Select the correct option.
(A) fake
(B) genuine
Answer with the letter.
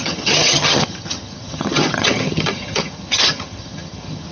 A